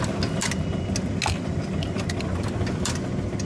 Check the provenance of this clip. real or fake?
real